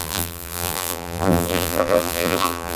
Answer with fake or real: fake